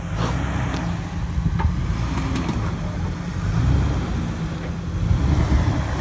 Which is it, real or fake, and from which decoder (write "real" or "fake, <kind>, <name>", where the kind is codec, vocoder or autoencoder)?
real